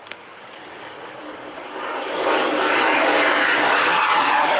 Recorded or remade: remade